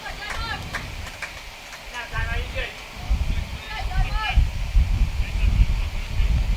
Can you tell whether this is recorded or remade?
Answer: recorded